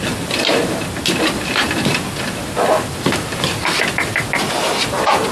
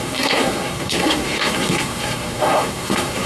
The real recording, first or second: first